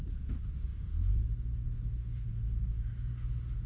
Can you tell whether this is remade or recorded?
remade